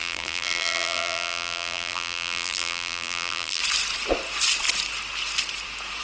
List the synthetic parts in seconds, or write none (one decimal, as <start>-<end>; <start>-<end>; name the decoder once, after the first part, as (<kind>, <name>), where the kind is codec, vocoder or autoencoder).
0.0-3.6 (vocoder, BigVGAN v2)